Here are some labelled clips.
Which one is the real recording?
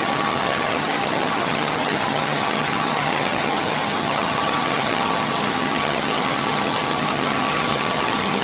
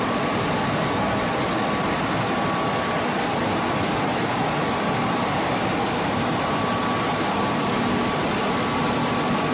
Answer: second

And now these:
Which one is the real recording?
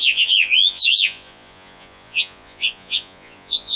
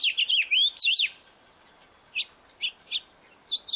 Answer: second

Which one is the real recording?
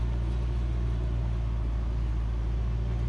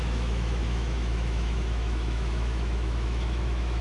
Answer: first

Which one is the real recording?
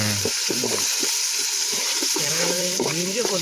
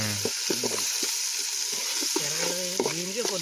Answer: second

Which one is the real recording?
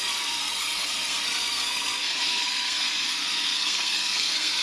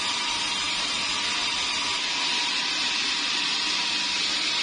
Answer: second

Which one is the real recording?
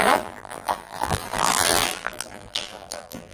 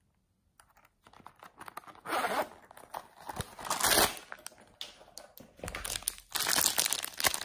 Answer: second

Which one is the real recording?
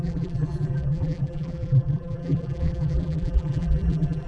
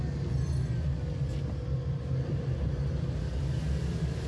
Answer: second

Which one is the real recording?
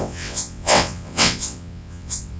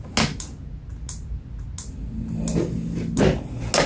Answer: second